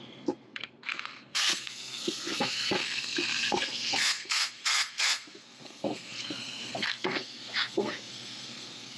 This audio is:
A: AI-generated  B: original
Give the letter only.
A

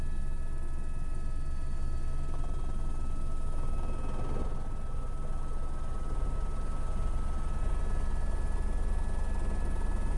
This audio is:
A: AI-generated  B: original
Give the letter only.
B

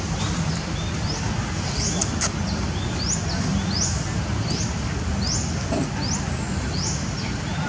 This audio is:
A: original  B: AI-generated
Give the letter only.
A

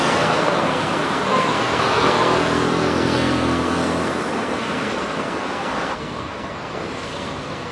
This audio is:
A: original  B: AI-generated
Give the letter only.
B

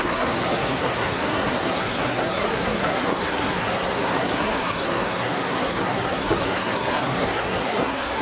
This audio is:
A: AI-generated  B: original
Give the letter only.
A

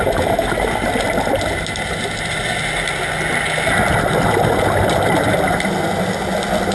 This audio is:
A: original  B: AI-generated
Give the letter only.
A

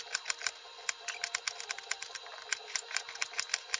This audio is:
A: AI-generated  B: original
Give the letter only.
B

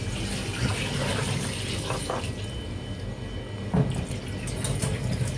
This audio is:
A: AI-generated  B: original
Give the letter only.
B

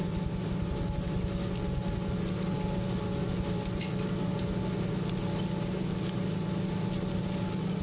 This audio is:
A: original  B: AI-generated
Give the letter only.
A